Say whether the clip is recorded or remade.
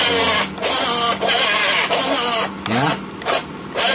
recorded